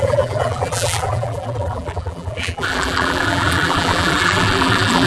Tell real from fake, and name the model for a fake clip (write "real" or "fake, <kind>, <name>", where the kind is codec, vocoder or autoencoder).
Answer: fake, vocoder, BigVGAN v2